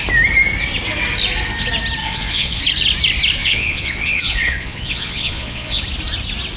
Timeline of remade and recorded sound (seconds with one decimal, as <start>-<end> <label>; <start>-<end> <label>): 0.0-2.0 recorded; 2.0-2.6 remade; 2.6-3.4 recorded; 3.4-5.8 remade; 5.8-6.6 recorded